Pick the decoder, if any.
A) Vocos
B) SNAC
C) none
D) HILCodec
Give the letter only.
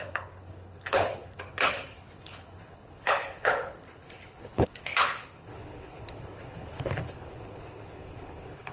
D